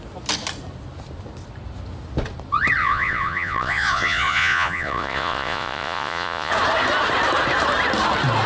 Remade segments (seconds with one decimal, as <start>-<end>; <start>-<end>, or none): 2.8-6.5